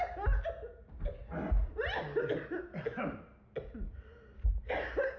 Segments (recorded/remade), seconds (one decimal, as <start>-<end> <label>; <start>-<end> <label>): 0.0-5.2 recorded